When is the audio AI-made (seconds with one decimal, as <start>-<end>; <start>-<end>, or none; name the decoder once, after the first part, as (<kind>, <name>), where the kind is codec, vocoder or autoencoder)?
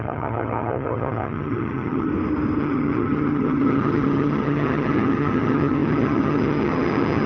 0.0-2.1 (vocoder, HiFi-GAN); 2.6-7.3